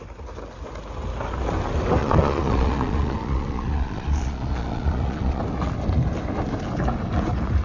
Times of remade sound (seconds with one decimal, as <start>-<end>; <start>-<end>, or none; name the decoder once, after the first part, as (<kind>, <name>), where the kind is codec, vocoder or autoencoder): 2.0-5.4 (vocoder, Vocos)